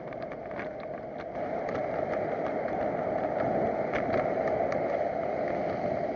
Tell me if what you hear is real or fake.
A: real